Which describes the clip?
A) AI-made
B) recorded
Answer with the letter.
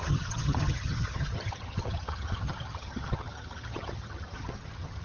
A